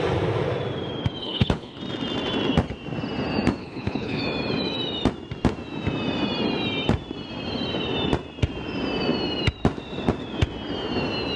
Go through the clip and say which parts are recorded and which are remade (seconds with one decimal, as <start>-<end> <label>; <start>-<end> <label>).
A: 0.0-1.2 recorded; 1.2-1.8 remade; 1.8-3.6 recorded; 3.6-4.2 remade; 4.2-11.4 recorded